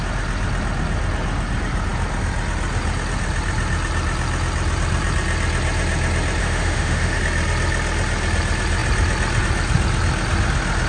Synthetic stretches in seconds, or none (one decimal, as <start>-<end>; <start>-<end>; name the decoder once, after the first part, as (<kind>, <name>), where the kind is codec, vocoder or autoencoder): 6.4-7.2 (autoencoder, DAC-VAE)